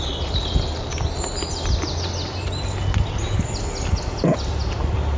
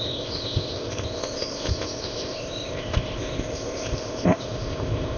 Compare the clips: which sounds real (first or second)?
first